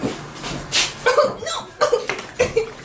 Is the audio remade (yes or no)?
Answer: no